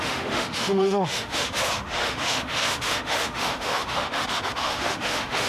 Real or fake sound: fake